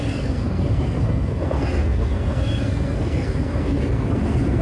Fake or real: fake